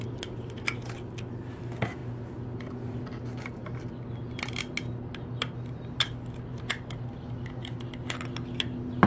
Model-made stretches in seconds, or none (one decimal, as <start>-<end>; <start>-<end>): none